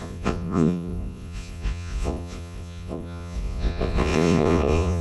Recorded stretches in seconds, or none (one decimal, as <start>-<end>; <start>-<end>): none